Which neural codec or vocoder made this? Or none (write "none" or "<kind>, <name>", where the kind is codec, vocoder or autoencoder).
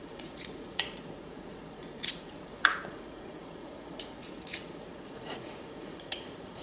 vocoder, Vocos